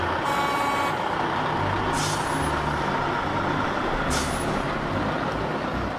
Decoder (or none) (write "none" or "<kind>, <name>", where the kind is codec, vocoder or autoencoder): none